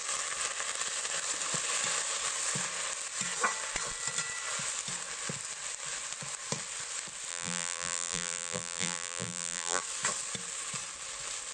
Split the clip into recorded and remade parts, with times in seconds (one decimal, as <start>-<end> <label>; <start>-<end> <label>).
0.0-7.3 recorded; 7.3-9.8 remade; 9.8-11.5 recorded